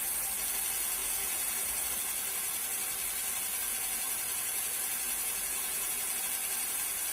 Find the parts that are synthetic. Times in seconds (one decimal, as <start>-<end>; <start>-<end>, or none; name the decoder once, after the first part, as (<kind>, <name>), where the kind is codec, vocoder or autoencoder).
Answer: 1.0-1.9 (vocoder, Vocos); 3.7-6.2

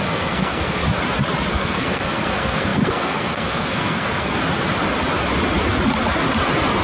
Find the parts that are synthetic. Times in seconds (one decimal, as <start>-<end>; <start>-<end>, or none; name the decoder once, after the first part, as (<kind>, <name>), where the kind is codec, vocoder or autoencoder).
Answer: 0.0-0.8 (codec, SNAC); 1.5-4.4

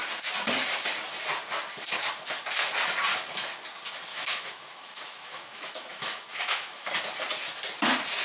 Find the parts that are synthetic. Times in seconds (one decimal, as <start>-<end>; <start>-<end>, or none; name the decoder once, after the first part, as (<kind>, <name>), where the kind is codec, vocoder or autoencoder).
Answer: 4.1-6.9 (autoencoder, DAC-VAE)

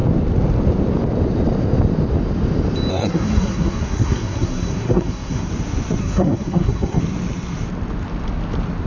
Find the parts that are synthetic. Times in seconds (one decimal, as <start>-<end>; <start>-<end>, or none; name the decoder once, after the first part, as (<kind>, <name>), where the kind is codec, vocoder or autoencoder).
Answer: 2.9-5.5 (codec, SNAC); 6.0-7.0

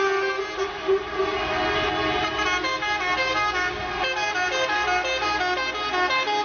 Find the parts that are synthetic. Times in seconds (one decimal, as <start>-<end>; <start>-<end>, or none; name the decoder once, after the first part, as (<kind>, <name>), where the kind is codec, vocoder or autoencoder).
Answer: 3.2-3.8 (codec, DAC)

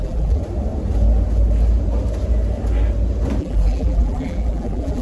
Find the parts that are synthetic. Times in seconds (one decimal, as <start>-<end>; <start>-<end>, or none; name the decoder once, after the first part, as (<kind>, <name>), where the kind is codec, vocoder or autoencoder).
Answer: 0.0-0.4 (vocoder, BigVGAN v2); 3.4-5.0

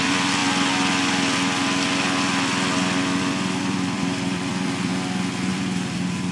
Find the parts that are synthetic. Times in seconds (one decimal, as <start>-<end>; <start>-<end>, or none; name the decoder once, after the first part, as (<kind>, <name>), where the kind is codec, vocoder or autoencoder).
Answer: 0.0-0.4 (vocoder, BigVGAN v2); 3.2-4.9; 5.5-6.3

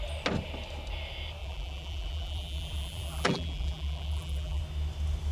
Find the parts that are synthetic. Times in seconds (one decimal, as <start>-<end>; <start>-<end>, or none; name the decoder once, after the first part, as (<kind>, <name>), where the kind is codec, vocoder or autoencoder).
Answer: 1.4-4.6 (vocoder, BigVGAN v2)